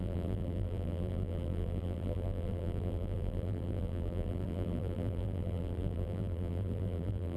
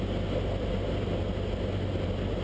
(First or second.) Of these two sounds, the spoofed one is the first